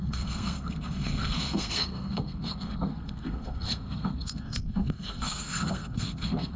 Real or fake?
fake